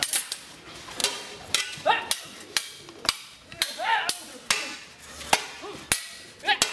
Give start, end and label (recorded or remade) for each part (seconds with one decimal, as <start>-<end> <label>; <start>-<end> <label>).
0.0-6.7 recorded